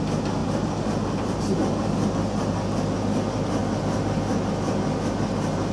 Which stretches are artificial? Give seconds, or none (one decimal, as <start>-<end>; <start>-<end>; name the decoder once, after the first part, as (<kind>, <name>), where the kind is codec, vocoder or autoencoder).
0.4-1.4 (vocoder, BigVGAN v2)